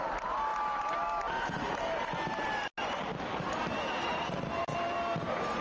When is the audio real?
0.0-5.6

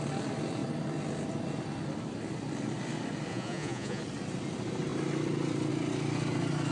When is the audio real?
0.0-3.3; 4.0-6.7